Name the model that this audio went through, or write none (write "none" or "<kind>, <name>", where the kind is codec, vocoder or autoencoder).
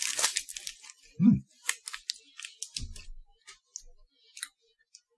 none